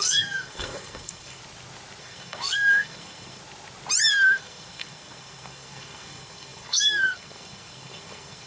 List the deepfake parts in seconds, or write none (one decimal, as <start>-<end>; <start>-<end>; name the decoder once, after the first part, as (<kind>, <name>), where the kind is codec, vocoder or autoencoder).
0.0-1.4 (codec, SNAC); 2.0-3.4; 4.1-8.5